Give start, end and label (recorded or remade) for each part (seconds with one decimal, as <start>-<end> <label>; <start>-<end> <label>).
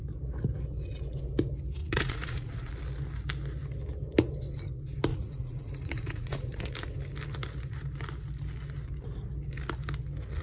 0.0-1.8 recorded; 1.8-2.7 remade; 2.7-5.1 recorded; 5.1-6.8 remade; 6.8-10.4 recorded